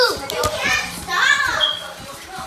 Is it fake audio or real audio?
real